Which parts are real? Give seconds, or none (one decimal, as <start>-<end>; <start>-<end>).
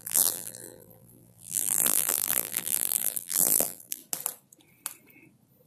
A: 4.0-5.7